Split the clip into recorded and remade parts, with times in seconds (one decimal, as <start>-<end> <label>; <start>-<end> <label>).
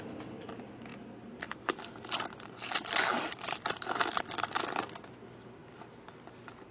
0.0-6.7 recorded